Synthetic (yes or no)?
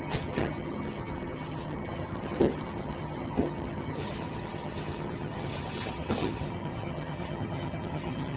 yes